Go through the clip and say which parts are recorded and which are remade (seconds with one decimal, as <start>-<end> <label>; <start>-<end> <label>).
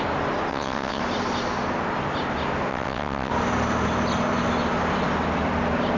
0.0-0.5 recorded; 0.5-1.0 remade; 1.0-2.7 recorded; 2.7-3.3 remade; 3.3-6.0 recorded